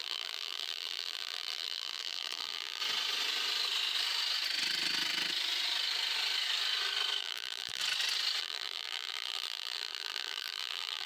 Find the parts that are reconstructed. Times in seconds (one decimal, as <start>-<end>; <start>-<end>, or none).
0.0-2.8; 7.2-7.8; 8.4-11.1